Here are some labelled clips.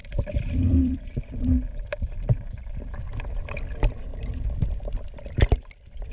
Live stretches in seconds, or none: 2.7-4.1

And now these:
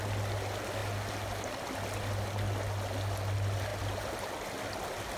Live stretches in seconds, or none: 0.0-5.2

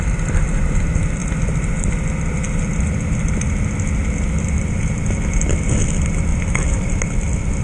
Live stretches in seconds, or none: 0.0-6.3; 7.0-7.6

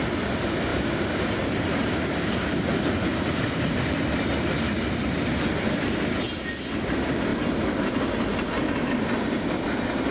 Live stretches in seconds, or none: 0.0-0.7; 2.2-3.1; 3.8-10.1

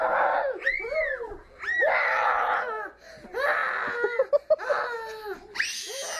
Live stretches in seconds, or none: 0.0-6.2

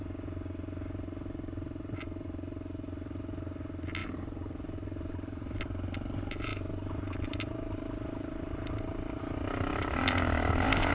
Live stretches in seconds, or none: 0.0-4.0; 5.6-6.5; 9.2-9.7